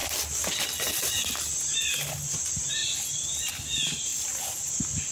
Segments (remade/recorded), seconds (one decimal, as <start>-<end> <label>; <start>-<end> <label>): 0.0-5.1 recorded

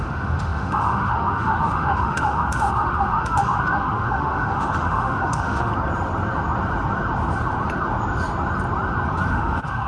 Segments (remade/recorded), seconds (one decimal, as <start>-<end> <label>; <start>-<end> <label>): 0.0-5.7 remade; 5.7-9.3 recorded; 9.3-9.9 remade

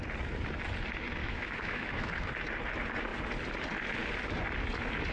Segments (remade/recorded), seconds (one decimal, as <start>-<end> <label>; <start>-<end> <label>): 0.0-1.2 recorded; 1.2-2.3 remade; 2.3-5.1 recorded

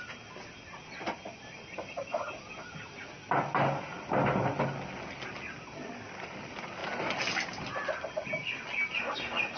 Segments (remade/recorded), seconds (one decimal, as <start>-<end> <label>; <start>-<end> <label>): 0.0-9.6 recorded

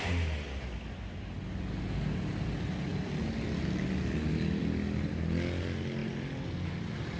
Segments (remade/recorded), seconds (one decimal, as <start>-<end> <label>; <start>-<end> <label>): 0.0-7.2 recorded

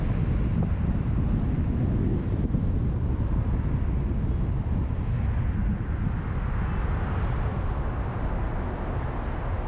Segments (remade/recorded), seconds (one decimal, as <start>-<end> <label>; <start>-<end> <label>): 0.0-2.1 recorded; 2.1-2.7 remade; 2.7-5.6 recorded; 5.6-6.2 remade; 6.2-9.7 recorded